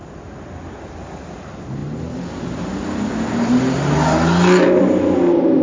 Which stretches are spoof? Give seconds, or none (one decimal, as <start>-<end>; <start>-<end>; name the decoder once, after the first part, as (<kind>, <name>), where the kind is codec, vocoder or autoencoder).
none